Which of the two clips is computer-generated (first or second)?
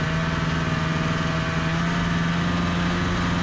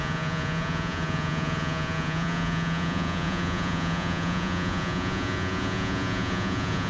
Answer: second